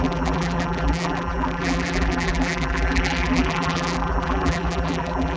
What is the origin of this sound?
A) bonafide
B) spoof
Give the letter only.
B